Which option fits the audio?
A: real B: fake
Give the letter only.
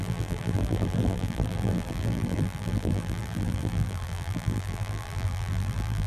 B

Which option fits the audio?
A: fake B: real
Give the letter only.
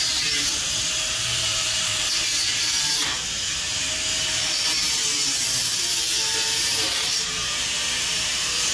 A